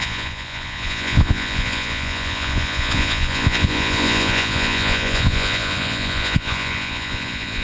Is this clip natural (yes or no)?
no